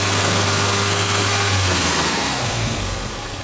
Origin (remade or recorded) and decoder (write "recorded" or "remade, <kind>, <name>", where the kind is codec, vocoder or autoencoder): remade, codec, SNAC